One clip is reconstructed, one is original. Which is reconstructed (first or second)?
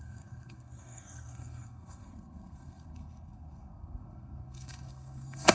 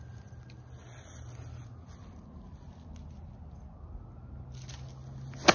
first